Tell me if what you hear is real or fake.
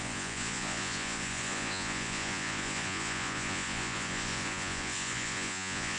fake